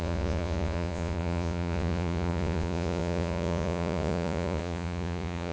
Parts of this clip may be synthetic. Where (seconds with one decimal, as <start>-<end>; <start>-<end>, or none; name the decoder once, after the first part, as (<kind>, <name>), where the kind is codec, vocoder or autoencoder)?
0.0-5.5 (vocoder, Vocos)